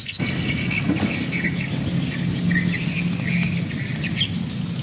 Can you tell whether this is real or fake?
real